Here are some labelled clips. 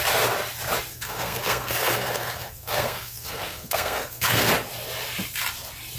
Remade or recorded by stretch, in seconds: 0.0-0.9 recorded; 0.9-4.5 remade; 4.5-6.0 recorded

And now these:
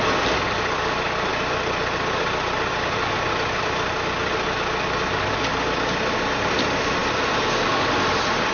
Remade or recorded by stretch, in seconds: 0.0-8.5 recorded

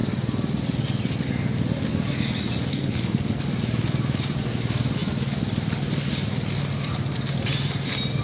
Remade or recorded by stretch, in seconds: 0.0-2.7 recorded; 2.7-3.4 remade; 3.4-8.2 recorded

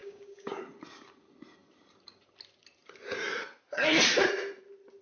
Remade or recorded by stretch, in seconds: 0.0-0.6 remade; 0.6-5.0 recorded

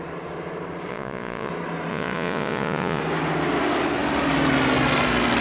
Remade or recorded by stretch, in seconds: 0.0-0.9 recorded; 0.9-1.5 remade; 1.5-1.9 recorded; 1.9-3.0 remade; 3.0-5.4 recorded